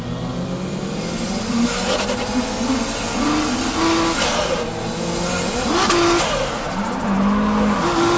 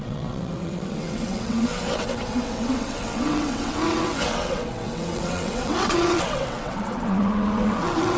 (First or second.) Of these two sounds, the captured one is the first